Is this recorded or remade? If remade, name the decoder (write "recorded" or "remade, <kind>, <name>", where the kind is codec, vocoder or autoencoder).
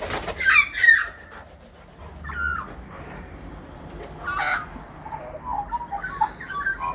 recorded